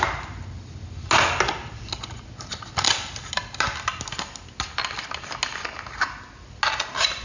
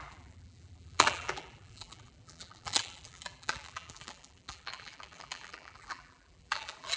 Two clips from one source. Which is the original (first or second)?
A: first